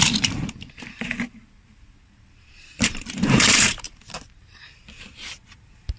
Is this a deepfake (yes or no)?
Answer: yes